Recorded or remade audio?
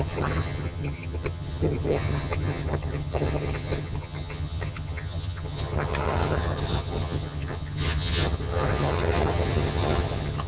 remade